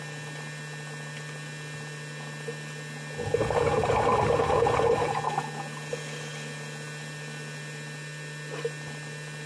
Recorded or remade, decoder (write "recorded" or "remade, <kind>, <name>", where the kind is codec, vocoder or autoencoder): recorded